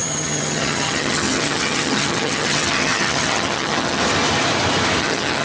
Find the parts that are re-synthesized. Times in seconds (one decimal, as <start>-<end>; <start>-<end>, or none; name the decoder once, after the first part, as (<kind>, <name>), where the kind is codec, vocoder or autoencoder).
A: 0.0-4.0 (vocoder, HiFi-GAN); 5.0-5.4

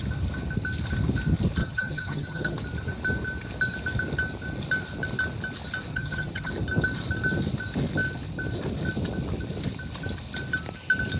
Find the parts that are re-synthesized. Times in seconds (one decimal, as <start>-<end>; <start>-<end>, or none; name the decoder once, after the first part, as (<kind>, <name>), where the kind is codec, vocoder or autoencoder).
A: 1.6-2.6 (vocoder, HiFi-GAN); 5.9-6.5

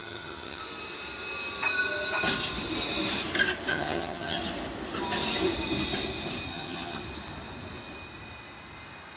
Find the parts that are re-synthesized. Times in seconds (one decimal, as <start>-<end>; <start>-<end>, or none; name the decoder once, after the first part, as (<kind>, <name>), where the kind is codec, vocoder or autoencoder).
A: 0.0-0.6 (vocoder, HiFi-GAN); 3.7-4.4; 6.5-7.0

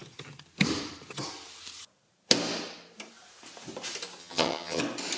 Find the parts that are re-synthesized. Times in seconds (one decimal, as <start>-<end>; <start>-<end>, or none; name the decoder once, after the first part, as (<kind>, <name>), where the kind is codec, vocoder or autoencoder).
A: 4.2-4.8 (vocoder, HiFi-GAN)

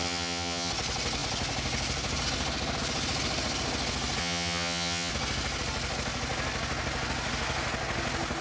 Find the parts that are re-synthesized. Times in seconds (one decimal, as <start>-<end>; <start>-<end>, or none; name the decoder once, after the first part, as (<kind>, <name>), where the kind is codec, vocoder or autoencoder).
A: 0.0-0.7 (vocoder, HiFi-GAN); 4.2-5.1

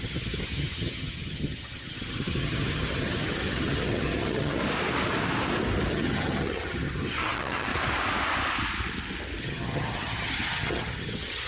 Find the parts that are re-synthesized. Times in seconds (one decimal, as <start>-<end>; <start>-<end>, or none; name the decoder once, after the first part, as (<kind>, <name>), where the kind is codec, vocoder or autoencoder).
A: 0.0-4.6 (vocoder, HiFi-GAN); 5.9-7.7; 9.4-11.5

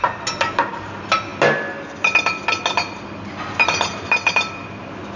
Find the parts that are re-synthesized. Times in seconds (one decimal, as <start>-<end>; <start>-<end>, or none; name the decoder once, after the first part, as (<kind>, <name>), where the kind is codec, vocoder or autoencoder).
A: none

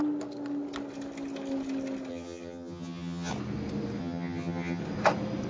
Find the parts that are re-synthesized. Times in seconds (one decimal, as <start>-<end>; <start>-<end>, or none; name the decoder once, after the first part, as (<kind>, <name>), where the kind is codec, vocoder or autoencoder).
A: 2.1-3.3 (vocoder, HiFi-GAN); 4.0-4.8